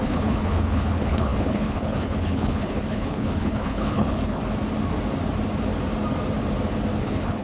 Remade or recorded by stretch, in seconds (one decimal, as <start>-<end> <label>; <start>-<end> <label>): 0.0-4.4 remade; 4.4-7.0 recorded; 7.0-7.4 remade